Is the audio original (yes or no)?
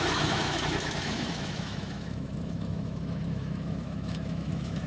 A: no